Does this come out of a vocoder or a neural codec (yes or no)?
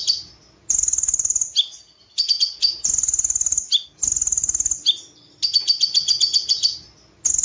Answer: no